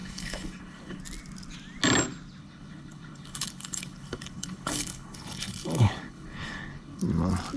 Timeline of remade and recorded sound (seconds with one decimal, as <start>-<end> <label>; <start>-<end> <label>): 0.0-1.0 remade; 1.0-2.4 recorded; 2.4-7.0 remade; 7.0-7.6 recorded